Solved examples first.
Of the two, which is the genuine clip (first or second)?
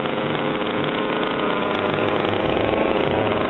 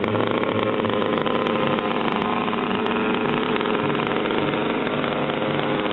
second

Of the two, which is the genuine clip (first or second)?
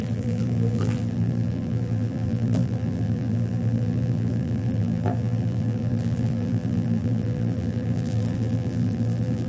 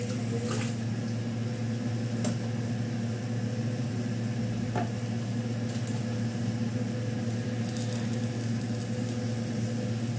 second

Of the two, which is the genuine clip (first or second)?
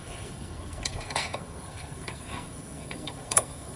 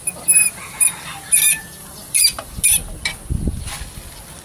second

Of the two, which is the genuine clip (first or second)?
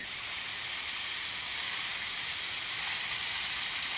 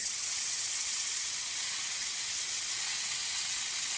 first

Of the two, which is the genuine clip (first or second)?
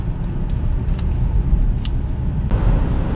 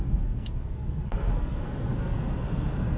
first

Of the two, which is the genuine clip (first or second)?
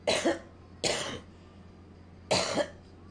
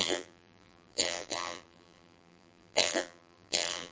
first